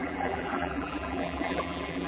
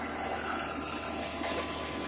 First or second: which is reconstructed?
first